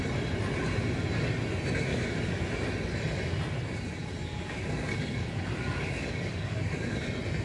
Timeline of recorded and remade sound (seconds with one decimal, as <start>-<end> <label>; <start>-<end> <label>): 0.0-1.9 recorded; 1.9-2.4 remade; 2.4-4.0 recorded; 4.0-7.0 remade; 7.0-7.4 recorded